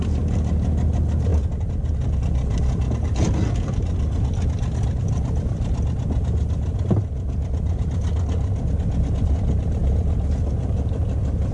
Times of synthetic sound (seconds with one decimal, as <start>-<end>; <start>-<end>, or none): none